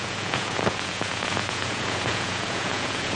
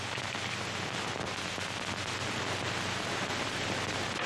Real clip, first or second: second